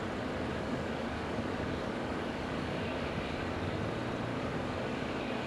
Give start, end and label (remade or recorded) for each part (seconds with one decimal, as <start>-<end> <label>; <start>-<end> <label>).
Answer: 0.0-0.5 recorded; 0.5-3.8 remade; 3.8-4.3 recorded; 4.3-5.5 remade